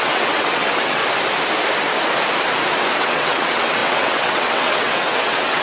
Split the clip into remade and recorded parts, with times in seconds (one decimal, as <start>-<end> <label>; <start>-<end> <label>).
0.0-1.0 remade; 1.0-3.0 recorded; 3.0-5.6 remade